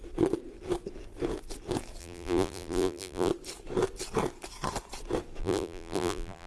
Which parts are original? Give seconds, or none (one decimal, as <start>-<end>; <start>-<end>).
0.0-2.0; 3.3-5.4